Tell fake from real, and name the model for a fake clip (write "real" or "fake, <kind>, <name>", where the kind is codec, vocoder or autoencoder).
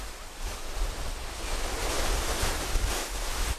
real